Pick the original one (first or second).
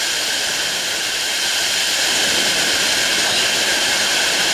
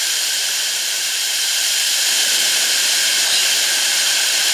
first